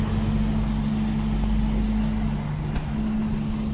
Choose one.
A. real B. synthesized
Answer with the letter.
A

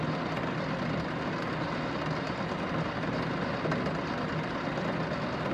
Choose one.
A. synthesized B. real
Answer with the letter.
B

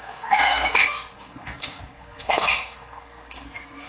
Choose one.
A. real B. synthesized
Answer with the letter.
B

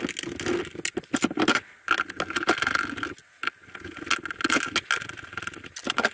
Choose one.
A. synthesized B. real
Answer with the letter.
B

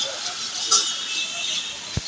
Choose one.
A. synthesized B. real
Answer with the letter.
B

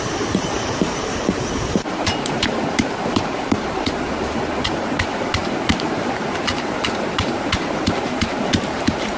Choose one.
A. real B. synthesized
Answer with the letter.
B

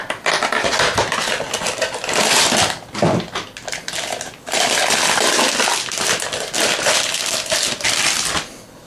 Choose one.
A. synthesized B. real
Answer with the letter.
B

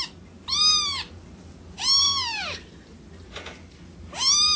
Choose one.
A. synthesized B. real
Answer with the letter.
B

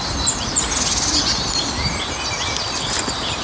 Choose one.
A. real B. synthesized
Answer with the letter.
A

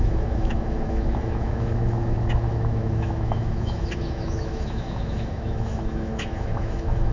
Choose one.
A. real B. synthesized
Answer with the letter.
B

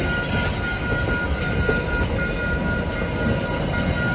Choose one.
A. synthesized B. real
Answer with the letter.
B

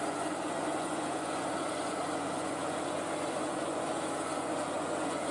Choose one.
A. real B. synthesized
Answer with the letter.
B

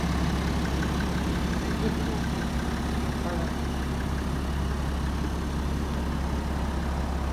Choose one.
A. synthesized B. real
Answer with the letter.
B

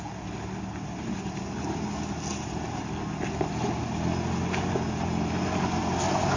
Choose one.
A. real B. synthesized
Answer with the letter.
A